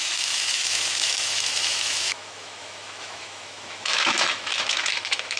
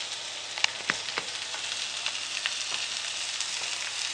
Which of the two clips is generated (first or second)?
first